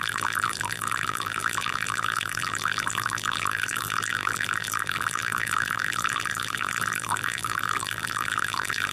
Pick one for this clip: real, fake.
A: fake